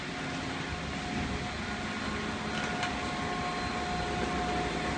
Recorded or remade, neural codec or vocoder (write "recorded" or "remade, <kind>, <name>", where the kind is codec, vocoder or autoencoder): recorded